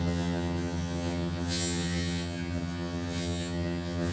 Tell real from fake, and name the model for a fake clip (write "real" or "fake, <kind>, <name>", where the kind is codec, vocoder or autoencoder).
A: fake, vocoder, HiFi-GAN